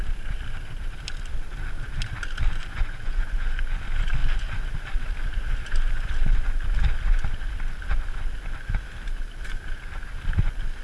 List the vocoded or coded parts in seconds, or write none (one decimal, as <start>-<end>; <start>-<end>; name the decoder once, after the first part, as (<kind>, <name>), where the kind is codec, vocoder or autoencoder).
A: 2.6-3.6 (vocoder, Vocos)